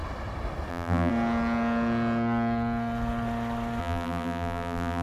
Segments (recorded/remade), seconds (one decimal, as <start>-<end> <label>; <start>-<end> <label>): 0.0-0.7 recorded; 0.7-1.1 remade; 1.1-3.8 recorded; 3.8-5.0 remade